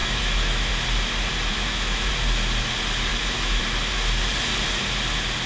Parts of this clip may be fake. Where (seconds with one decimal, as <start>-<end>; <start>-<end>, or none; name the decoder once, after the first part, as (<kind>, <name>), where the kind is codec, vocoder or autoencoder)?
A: 0.0-0.7 (autoencoder, DAC-VAE); 1.5-2.1; 3.1-3.6